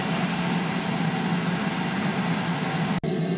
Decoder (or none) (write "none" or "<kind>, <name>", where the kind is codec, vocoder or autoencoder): none